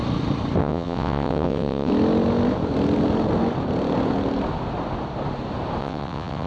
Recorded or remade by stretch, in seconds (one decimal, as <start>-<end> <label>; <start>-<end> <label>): 0.0-0.6 recorded; 0.6-1.9 remade; 1.9-5.8 recorded; 5.8-6.5 remade